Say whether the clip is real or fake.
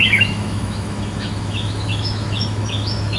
fake